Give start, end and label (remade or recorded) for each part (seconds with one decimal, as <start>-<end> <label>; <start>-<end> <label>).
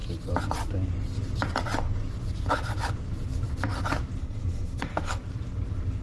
0.0-4.2 recorded; 4.2-5.2 remade; 5.2-6.0 recorded